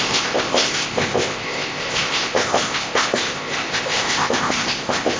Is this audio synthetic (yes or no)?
yes